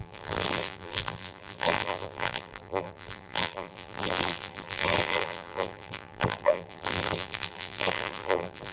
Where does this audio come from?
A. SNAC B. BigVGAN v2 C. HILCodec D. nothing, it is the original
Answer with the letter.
B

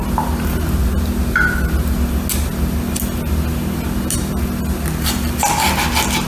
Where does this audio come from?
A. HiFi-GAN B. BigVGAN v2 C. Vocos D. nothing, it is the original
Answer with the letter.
D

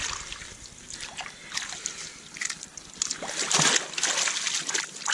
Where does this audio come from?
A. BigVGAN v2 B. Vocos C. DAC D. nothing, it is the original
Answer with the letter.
D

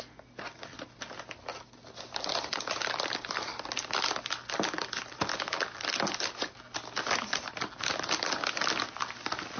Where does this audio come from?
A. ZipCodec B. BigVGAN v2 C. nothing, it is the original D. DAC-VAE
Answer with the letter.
C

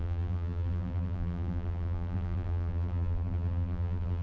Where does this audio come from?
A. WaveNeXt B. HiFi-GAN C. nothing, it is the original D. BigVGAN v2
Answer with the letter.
D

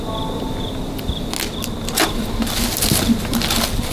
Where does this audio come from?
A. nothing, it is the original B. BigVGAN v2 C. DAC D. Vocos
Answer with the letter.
A